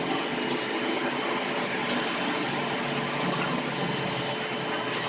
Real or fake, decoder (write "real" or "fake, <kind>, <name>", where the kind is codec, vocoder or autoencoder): real